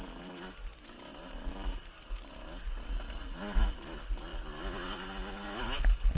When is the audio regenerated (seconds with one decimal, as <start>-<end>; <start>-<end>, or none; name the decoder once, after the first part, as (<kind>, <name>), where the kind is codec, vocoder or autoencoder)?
1.1-1.9 (vocoder, BigVGAN v2)